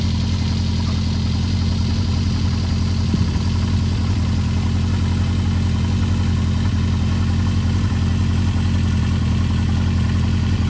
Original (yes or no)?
yes